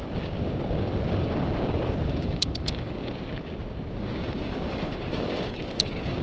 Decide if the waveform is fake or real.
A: fake